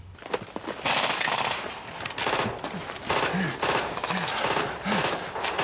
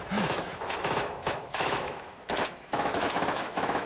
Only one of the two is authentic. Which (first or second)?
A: first